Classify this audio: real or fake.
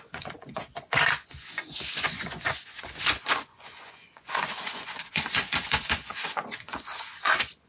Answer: fake